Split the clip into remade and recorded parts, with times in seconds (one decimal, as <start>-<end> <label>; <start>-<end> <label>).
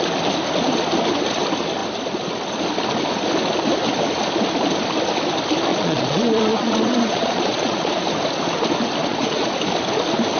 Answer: 0.0-5.7 recorded; 5.7-7.9 remade; 7.9-9.0 recorded; 9.0-9.5 remade; 9.5-10.4 recorded